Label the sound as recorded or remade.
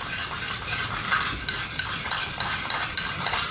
recorded